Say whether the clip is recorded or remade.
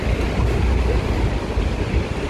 recorded